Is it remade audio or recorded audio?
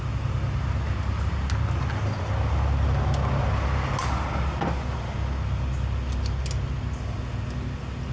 recorded